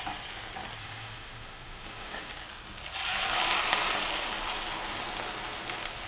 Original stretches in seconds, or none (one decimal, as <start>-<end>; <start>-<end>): 0.0-0.8; 2.3-6.1